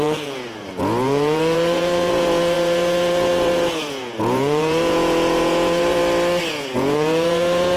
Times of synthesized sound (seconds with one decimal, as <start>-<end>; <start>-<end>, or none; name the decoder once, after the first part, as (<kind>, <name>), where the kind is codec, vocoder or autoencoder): 0.0-6.0 (vocoder, Vocos); 6.5-7.8